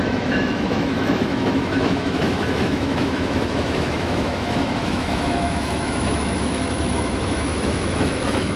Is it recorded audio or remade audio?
remade